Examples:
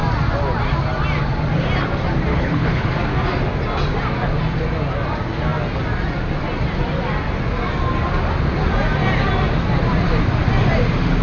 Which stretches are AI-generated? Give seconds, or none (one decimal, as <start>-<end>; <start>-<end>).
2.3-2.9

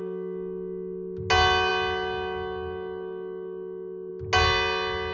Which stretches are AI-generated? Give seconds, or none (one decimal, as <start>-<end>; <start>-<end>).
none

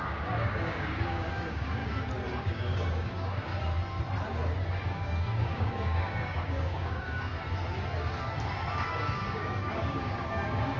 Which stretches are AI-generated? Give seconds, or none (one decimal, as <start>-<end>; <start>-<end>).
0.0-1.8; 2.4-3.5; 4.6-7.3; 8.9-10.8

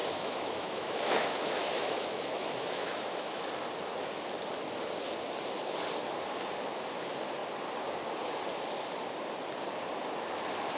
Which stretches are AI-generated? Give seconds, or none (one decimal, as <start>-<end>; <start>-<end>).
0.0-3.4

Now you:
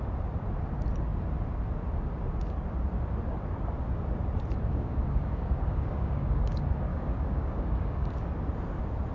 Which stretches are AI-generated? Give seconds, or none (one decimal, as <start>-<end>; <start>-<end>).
4.7-6.5; 6.9-8.3